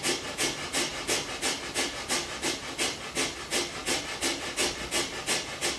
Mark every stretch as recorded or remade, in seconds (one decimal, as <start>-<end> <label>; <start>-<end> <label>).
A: 0.0-5.8 recorded